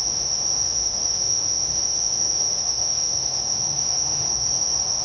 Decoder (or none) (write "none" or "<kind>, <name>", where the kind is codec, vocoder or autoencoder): autoencoder, DAC-VAE